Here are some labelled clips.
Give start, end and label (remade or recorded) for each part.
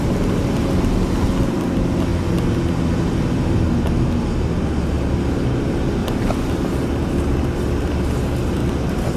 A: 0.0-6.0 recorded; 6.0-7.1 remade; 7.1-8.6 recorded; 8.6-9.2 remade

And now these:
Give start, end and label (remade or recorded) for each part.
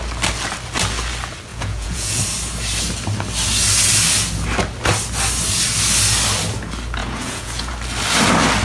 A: 0.0-1.5 recorded; 1.5-2.2 remade; 2.2-7.0 recorded; 7.0-7.7 remade; 7.7-8.6 recorded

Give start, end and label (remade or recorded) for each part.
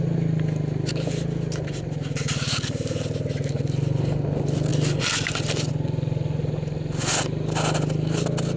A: 0.0-8.6 recorded